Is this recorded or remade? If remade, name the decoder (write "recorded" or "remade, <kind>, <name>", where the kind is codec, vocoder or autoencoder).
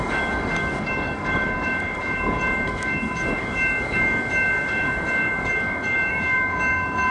remade, codec, DAC